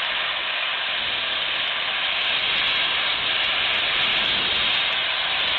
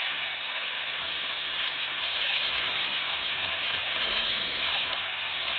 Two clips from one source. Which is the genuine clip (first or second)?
first